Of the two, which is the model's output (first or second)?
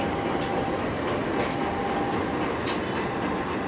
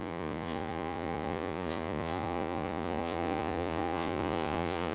second